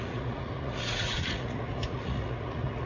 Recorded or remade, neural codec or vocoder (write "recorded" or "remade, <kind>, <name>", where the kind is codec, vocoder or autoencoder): remade, vocoder, Vocos